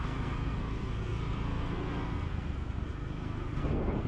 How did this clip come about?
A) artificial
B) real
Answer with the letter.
A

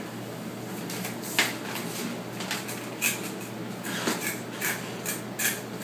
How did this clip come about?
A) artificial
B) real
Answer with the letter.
B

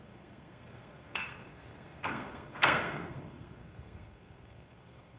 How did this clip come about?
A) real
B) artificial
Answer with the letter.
B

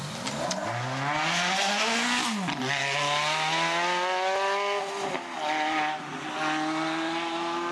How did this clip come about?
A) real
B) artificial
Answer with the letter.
A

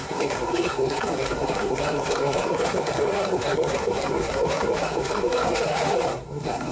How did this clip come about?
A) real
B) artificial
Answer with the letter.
B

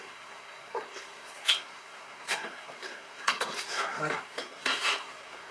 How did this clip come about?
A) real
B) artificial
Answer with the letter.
B